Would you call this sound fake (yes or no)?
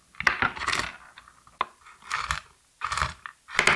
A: no